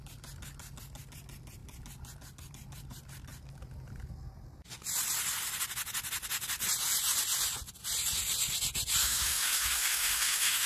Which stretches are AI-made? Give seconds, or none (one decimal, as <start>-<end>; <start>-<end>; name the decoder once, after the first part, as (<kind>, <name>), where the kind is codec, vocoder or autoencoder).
9.0-10.7 (autoencoder, DAC-VAE)